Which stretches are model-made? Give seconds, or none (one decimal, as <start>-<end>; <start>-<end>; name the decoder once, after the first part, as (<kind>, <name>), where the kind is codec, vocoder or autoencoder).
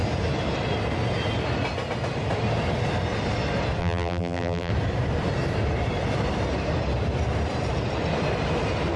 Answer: 3.8-4.7 (vocoder, BigVGAN v2)